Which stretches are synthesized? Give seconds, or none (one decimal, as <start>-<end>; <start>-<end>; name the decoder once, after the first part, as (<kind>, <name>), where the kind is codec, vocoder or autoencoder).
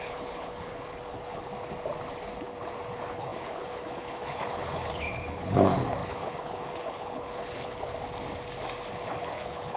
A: 0.0-1.5 (codec, HILCodec); 2.9-7.9; 9.0-9.8